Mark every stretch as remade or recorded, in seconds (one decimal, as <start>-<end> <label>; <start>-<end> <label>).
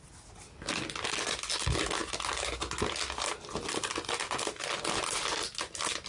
0.0-6.1 recorded